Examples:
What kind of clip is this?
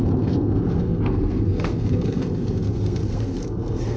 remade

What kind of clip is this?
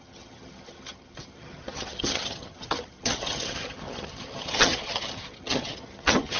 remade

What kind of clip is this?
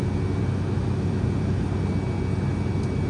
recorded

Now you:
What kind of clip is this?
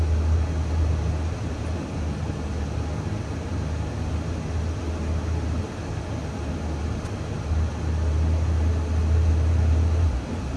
recorded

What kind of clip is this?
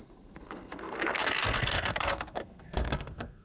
remade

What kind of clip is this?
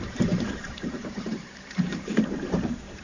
remade